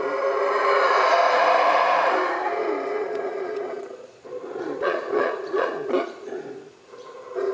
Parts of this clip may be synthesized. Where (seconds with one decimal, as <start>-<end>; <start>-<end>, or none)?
3.0-6.4